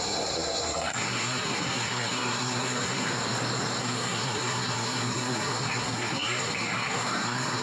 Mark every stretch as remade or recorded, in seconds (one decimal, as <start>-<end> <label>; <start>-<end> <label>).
0.0-3.1 remade; 3.1-3.8 recorded; 3.8-7.6 remade